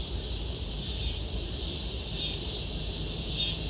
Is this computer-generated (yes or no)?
yes